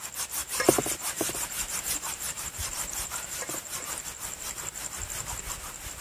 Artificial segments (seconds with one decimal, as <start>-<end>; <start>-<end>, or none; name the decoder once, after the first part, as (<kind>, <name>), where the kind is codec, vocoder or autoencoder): 0.4-4.0 (vocoder, BigVGAN v2)